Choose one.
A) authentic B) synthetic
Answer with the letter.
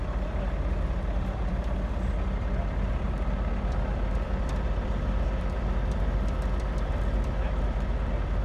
B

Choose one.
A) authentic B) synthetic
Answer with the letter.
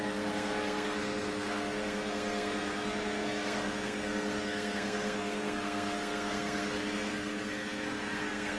B